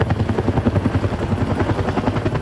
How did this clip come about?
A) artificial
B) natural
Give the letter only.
B